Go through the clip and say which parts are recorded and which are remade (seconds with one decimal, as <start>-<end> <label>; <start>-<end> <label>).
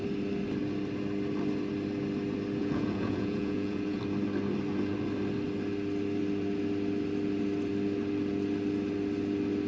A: 0.0-2.6 recorded; 2.6-4.0 remade; 4.0-9.7 recorded